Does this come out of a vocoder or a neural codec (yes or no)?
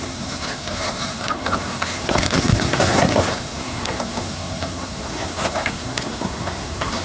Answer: yes